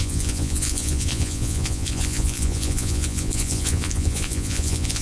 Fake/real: fake